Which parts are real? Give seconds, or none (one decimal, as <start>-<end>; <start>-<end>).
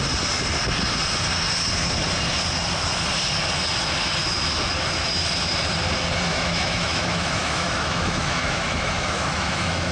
0.0-6.3